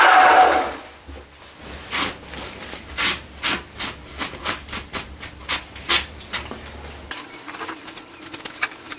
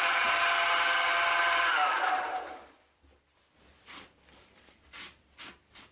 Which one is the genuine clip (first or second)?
first